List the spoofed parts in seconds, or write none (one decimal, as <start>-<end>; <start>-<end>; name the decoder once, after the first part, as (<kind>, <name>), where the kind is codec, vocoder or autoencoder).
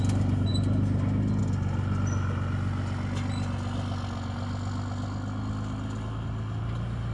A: none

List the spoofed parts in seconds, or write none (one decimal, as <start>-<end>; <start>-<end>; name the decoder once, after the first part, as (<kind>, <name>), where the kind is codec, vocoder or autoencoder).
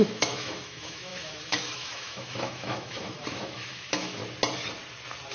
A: 0.0-4.2 (autoencoder, DAC-VAE)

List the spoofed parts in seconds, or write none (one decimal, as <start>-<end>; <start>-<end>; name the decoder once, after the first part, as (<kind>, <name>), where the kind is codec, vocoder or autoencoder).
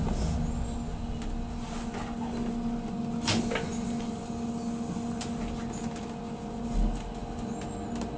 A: none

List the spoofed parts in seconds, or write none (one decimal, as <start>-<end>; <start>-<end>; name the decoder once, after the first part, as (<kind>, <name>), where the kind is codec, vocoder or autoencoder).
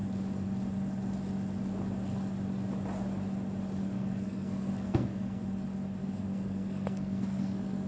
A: 3.8-5.4 (codec, SNAC); 6.0-7.9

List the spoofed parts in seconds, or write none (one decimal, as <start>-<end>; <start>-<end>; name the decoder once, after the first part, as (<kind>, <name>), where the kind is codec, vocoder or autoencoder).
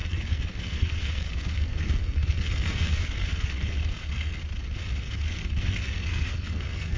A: 0.0-4.4 (codec, SNAC); 5.0-7.0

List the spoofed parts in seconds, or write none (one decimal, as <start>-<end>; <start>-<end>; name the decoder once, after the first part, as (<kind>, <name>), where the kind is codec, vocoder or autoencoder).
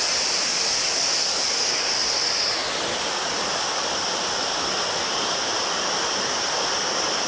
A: 0.0-0.5 (vocoder, BigVGAN v2); 4.9-7.3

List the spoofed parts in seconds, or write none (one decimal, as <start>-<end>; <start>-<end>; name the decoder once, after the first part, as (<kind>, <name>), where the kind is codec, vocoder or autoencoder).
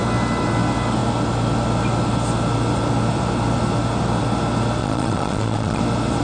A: 4.8-5.8 (vocoder, Vocos)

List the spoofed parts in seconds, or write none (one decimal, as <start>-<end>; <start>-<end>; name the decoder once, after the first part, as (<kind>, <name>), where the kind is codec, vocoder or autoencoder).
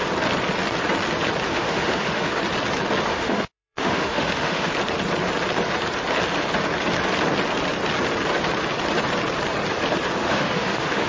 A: 1.5-2.4 (autoencoder, DAC-VAE); 3.1-4.7; 10.2-11.1